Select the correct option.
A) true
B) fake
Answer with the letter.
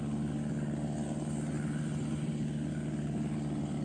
A